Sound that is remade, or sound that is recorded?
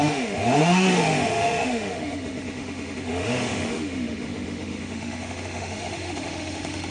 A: remade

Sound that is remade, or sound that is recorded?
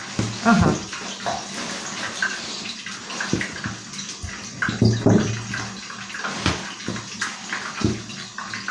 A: recorded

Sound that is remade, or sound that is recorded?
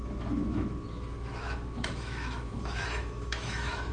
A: remade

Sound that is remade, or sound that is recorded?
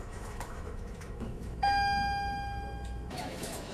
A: remade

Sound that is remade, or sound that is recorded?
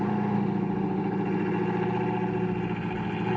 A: recorded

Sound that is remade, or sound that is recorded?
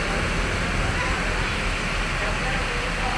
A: recorded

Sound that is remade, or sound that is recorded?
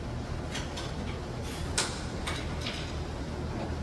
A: recorded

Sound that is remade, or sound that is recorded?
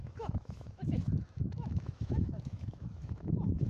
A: remade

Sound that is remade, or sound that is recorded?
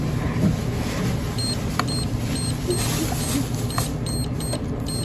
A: recorded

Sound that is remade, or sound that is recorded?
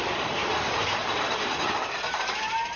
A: recorded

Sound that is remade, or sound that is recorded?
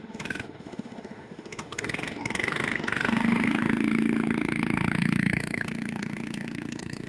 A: remade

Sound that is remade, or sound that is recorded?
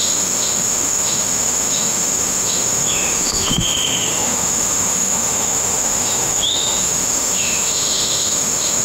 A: remade